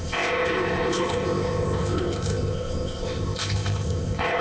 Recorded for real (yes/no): no